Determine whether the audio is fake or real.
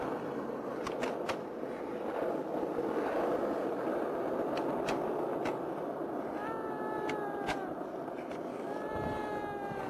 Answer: real